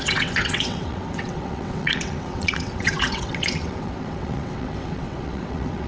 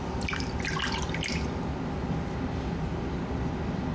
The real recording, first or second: second